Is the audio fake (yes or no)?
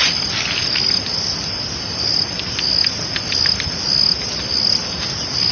no